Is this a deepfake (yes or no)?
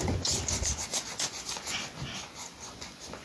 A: yes